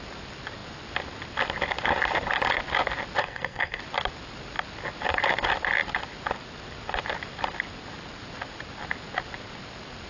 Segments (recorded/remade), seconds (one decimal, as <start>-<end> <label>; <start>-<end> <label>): 0.0-3.2 recorded; 3.2-3.8 remade; 3.8-10.1 recorded